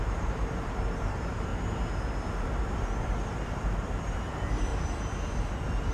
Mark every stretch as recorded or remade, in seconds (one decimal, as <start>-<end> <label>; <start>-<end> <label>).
0.0-1.5 remade; 1.5-2.3 recorded; 2.3-4.7 remade; 4.7-5.9 recorded